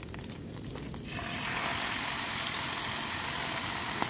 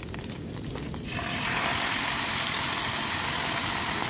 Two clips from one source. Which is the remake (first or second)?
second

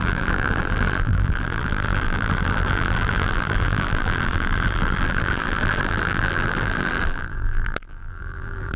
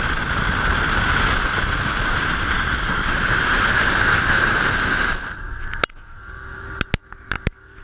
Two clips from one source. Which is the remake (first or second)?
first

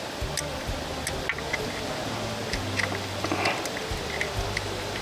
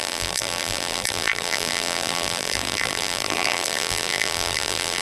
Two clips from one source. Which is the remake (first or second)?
second